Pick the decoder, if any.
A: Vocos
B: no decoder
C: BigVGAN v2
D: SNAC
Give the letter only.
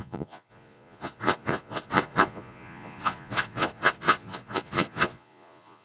A